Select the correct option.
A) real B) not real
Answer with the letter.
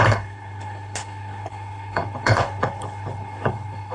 B